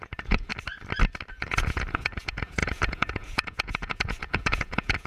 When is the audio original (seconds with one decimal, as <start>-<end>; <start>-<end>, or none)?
0.5-1.3